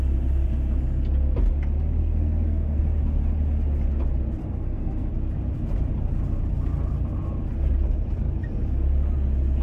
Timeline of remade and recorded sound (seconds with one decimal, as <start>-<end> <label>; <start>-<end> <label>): 0.0-2.0 recorded; 2.0-2.8 remade; 2.8-4.4 recorded; 4.4-5.1 remade; 5.1-9.6 recorded